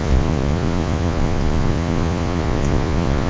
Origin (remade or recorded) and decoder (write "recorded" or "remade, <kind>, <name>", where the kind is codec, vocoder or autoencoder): remade, vocoder, Vocos